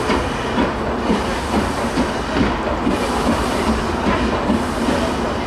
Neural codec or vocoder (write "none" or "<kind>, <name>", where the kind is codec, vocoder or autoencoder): none